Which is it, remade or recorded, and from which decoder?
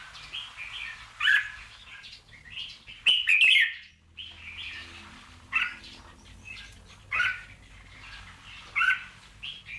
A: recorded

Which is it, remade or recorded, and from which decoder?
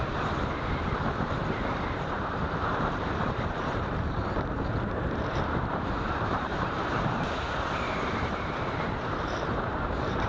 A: remade, vocoder, BigVGAN v2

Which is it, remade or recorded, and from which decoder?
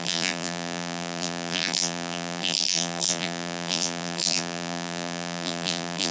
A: remade, vocoder, BigVGAN v2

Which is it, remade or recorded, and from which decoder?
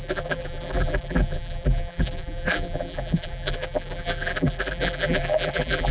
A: remade, vocoder, BigVGAN v2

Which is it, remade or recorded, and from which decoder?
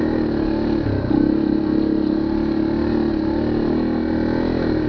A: recorded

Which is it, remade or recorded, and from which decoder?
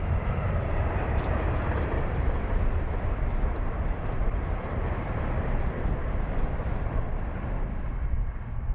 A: remade, vocoder, BigVGAN v2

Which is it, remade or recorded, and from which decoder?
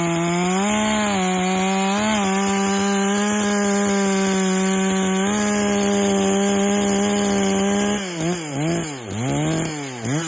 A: recorded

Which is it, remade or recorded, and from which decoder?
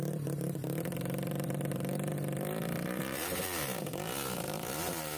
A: remade, vocoder, BigVGAN v2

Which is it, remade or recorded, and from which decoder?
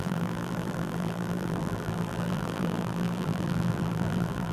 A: remade, vocoder, BigVGAN v2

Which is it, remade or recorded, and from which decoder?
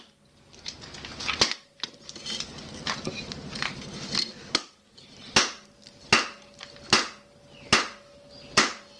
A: recorded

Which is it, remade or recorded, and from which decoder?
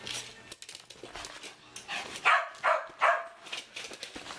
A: recorded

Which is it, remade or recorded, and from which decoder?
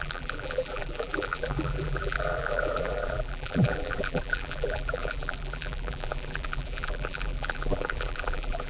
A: remade, vocoder, BigVGAN v2